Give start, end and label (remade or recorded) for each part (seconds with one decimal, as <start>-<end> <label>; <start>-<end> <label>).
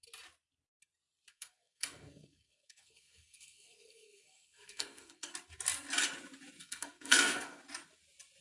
0.0-1.3 recorded; 1.3-5.3 remade; 5.3-6.6 recorded; 6.6-7.6 remade; 7.6-8.4 recorded